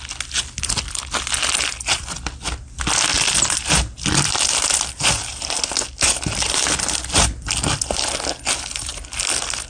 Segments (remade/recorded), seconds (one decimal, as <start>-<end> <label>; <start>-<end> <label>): 0.0-9.7 recorded